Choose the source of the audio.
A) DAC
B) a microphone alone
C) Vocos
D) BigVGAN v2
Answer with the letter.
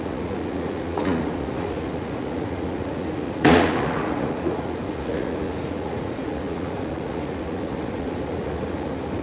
C